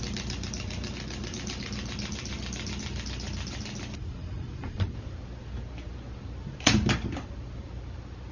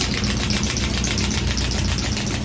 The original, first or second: second